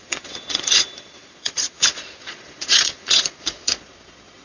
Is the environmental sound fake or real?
fake